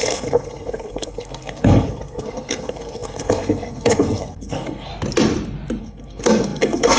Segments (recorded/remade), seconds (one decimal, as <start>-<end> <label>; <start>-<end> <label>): 0.0-4.9 remade; 4.9-5.8 recorded; 5.8-7.0 remade

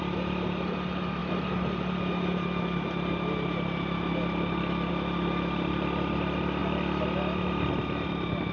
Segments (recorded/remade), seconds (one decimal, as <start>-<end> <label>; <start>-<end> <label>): 0.0-8.5 recorded

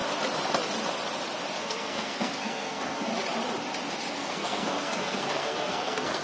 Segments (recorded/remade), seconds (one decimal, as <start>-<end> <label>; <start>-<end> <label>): 0.0-1.6 recorded; 1.6-3.1 remade; 3.1-4.1 recorded; 4.1-6.2 remade

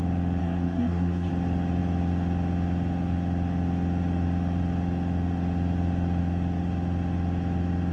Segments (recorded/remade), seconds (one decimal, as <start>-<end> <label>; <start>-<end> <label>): 0.0-0.4 recorded; 0.4-1.3 remade; 1.3-7.9 recorded

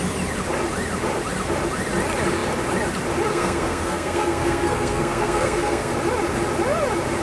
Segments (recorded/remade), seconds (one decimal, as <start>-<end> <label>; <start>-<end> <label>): 0.0-3.3 recorded; 3.3-5.9 remade; 5.9-7.2 recorded

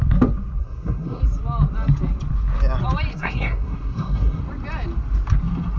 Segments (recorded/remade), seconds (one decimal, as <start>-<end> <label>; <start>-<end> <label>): 0.0-0.6 recorded; 0.6-1.2 remade; 1.2-3.1 recorded; 3.1-4.4 remade; 4.4-5.8 recorded

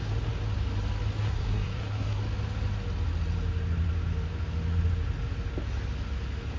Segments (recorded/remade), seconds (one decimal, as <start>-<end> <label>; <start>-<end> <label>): 0.0-1.2 recorded; 1.2-2.2 remade; 2.2-6.6 recorded